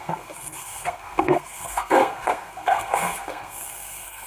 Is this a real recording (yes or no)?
no